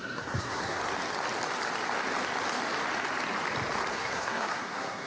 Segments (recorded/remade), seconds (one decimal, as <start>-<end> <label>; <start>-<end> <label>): 0.0-0.8 remade; 0.8-3.9 recorded; 3.9-5.1 remade